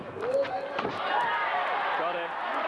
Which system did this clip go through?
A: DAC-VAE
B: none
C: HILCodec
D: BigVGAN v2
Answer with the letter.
D